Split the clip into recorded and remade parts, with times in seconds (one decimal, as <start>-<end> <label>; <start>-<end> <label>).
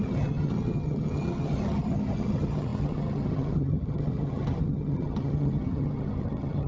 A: 0.0-6.7 remade